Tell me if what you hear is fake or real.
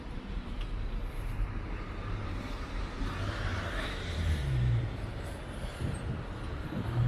fake